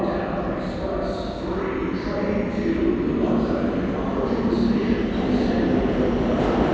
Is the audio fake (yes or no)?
no